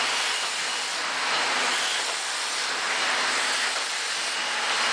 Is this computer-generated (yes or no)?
no